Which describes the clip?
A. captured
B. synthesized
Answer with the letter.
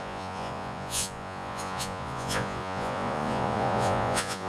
B